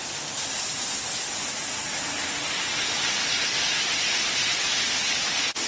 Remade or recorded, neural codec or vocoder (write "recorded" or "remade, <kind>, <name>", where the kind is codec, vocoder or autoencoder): recorded